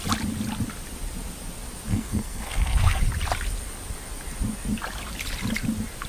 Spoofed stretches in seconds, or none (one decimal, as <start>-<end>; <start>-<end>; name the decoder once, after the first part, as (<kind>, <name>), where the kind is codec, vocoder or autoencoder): 1.9-3.0 (codec, SNAC)